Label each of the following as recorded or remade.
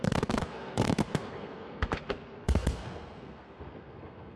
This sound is remade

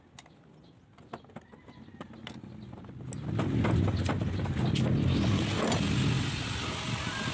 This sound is recorded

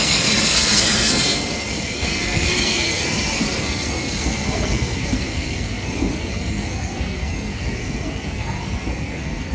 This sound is remade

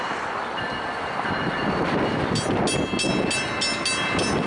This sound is recorded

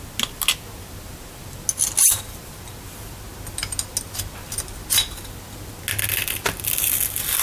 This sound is recorded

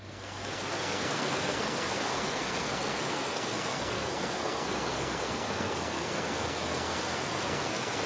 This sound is remade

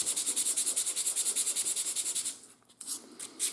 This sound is recorded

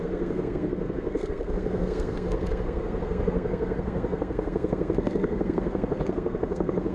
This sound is remade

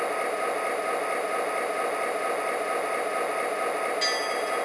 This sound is recorded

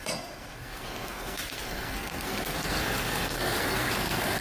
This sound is remade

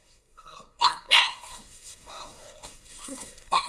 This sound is remade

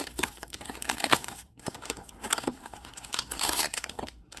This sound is remade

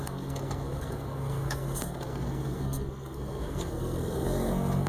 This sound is remade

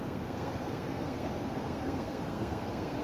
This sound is remade